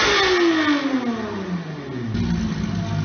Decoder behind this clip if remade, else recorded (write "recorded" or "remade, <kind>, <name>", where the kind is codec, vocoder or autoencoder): recorded